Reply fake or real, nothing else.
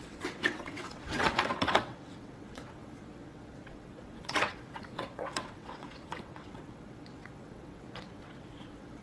fake